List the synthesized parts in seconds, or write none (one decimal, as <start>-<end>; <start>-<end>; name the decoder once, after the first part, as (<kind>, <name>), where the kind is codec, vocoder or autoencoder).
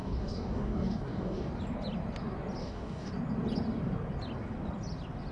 0.0-1.5 (codec, DAC); 2.6-3.1